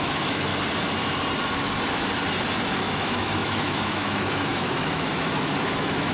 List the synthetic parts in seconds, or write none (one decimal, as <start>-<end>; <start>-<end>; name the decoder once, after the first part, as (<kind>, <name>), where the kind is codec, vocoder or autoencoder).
0.0-0.5 (autoencoder, DAC-VAE); 2.8-6.1